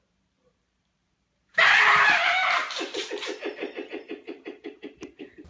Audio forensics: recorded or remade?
remade